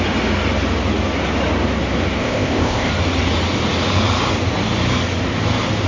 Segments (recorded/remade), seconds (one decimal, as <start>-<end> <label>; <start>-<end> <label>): 0.0-2.2 recorded; 2.2-2.9 remade; 2.9-5.9 recorded